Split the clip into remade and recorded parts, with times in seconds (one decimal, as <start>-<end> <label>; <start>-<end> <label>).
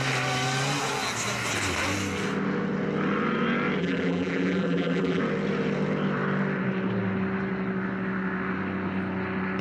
0.0-3.8 recorded; 3.8-5.2 remade; 5.2-9.6 recorded